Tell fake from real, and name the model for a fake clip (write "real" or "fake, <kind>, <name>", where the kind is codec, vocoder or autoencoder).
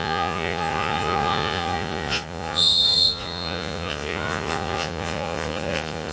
fake, vocoder, Vocos